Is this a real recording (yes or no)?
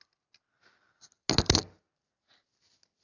yes